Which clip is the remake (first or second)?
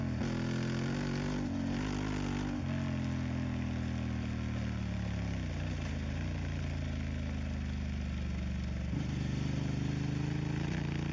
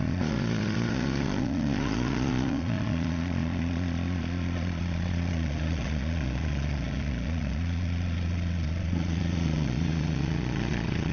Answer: second